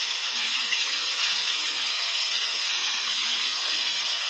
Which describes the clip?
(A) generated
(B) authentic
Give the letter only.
A